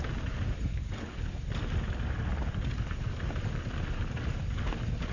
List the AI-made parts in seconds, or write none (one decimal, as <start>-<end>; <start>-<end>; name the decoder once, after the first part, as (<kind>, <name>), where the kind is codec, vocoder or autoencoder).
0.7-1.3 (codec, HILCodec)